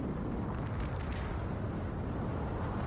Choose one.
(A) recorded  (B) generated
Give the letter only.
A